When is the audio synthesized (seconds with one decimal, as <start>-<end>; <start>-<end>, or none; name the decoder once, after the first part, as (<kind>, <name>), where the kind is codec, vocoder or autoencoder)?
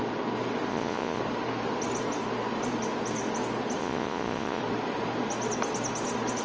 0.7-1.2 (vocoder, Vocos); 3.8-4.6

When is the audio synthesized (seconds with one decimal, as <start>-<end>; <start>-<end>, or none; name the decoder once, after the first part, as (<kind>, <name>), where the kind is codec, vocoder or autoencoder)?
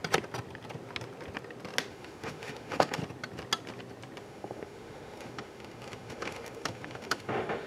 1.9-3.0 (autoencoder, DAC-VAE); 4.2-7.7